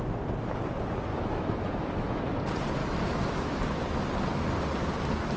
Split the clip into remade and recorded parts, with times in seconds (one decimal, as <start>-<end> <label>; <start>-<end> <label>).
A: 0.0-1.1 recorded; 1.1-2.2 remade; 2.2-2.8 recorded; 2.8-3.6 remade; 3.6-5.4 recorded